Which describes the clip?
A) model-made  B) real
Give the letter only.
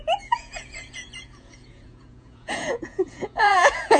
A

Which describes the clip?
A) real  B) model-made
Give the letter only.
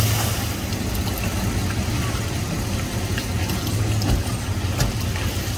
A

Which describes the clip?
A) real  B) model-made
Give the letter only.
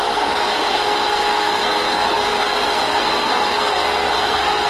B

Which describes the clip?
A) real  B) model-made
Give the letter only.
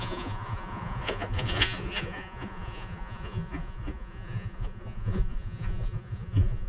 B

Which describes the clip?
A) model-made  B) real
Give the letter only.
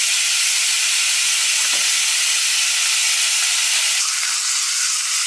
B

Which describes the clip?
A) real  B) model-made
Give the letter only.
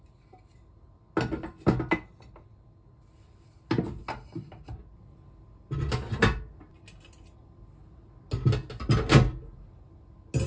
A